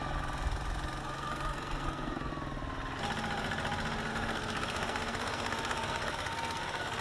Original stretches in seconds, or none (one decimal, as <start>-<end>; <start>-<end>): 0.0-1.0; 2.3-4.1

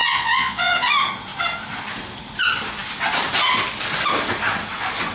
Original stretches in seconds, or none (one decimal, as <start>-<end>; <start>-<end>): 0.9-5.1

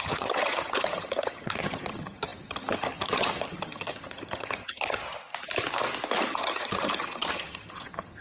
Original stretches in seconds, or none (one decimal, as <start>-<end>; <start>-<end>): 5.0-6.3

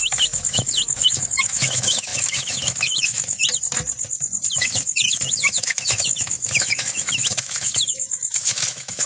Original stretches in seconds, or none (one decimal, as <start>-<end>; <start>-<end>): 3.4-4.6

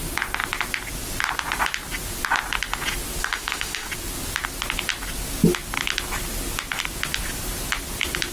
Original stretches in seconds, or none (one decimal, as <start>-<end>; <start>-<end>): 0.0-3.2; 3.9-8.3